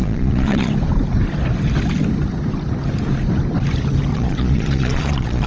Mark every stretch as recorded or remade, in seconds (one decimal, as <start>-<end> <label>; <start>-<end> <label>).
0.0-0.7 remade; 0.7-4.1 recorded; 4.1-5.5 remade